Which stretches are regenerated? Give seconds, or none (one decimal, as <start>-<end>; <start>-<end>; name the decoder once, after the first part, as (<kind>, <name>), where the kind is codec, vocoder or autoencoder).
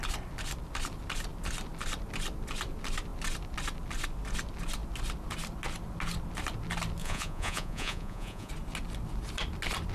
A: 7.0-8.5 (vocoder, Vocos)